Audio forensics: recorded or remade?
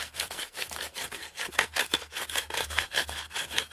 remade